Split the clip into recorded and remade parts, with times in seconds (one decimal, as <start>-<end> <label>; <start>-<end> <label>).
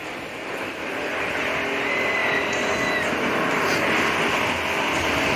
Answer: 0.0-5.4 recorded